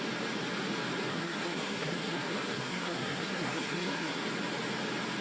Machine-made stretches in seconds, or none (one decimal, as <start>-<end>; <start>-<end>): 1.1-4.2